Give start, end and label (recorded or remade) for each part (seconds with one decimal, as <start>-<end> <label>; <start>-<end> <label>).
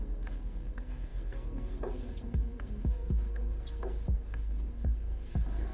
0.0-5.7 remade